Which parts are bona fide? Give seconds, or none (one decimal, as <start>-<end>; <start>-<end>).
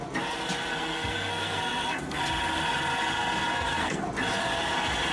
0.0-0.7; 2.2-3.5; 4.0-5.1